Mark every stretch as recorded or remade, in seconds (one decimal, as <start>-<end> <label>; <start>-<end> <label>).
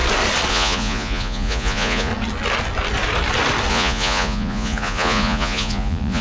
0.0-0.5 recorded; 0.5-2.1 remade; 2.1-3.7 recorded; 3.7-6.2 remade